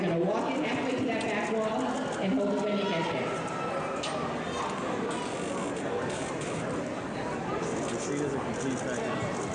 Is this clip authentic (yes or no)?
yes